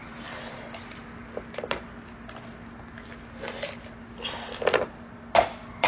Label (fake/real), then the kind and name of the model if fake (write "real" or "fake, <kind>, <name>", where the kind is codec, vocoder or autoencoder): real